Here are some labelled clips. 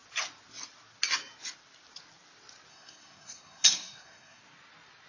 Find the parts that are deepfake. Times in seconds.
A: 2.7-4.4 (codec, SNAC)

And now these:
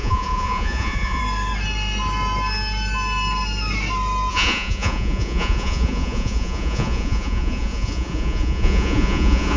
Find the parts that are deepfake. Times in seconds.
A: 0.0-1.2 (vocoder, Vocos); 4.3-9.6

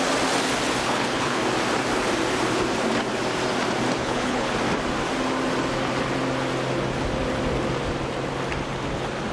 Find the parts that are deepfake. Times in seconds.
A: 0.8-1.4 (codec, HILCodec); 4.0-4.5

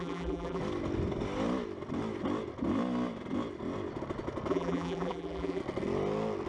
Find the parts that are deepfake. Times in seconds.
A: 0.0-0.6 (vocoder, BigVGAN v2); 4.5-5.6

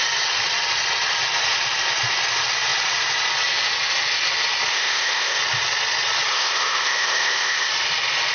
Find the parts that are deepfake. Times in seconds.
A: 4.7-5.4 (codec, ZipCodec); 6.3-7.7

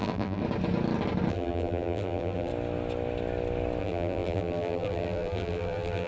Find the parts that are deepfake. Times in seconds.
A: 0.0-0.4 (vocoder, BigVGAN v2); 1.3-2.5; 3.8-6.1